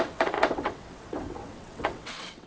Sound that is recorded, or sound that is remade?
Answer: remade